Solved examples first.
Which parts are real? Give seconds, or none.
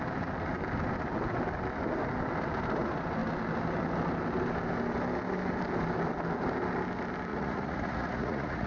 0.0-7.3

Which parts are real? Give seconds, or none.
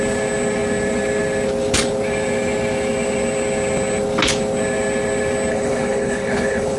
0.0-5.5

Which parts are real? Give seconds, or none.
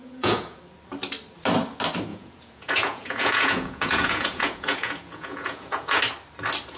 0.6-2.1; 6.0-6.8